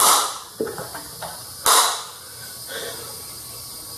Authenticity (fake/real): real